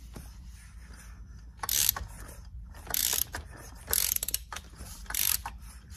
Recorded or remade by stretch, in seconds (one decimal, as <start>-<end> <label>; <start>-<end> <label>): 0.0-0.8 remade; 0.8-2.2 recorded; 2.2-3.0 remade; 3.0-3.8 recorded; 3.8-6.0 remade